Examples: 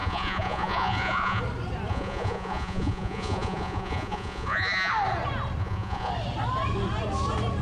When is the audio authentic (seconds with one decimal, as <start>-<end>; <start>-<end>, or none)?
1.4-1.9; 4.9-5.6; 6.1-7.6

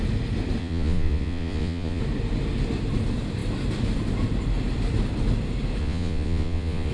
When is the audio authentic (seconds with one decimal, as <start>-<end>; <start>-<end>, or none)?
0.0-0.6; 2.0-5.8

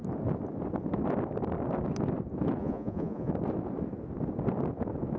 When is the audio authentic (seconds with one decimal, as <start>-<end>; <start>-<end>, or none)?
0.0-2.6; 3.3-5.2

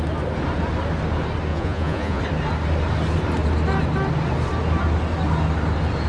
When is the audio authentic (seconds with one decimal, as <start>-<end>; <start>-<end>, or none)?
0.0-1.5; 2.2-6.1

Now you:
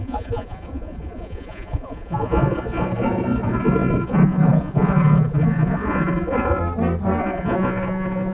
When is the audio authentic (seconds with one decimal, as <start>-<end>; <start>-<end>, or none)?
6.6-7.2

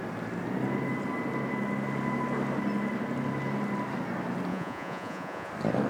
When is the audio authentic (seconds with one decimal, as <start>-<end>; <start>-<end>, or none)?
0.0-4.5; 5.5-5.9